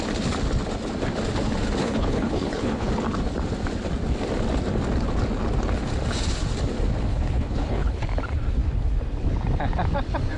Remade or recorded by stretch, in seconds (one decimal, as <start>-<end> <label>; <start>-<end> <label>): 0.0-1.8 recorded; 1.8-2.9 remade; 2.9-7.1 recorded; 7.1-8.0 remade; 8.0-10.4 recorded